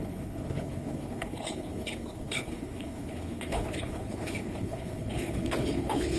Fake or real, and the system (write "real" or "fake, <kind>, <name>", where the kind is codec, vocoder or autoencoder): fake, codec, HILCodec